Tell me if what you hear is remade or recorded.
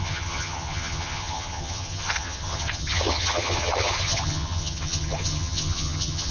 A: remade